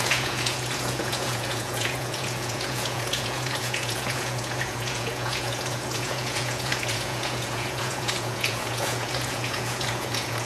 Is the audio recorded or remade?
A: remade